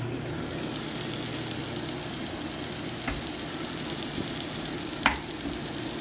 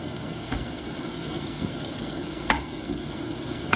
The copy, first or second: second